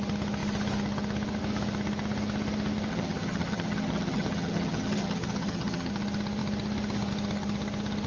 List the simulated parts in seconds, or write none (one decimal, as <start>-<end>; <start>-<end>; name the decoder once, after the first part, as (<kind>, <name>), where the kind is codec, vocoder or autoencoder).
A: 2.9-5.9 (vocoder, HiFi-GAN)